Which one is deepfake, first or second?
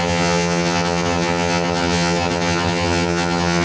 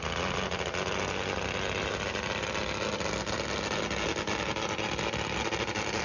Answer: first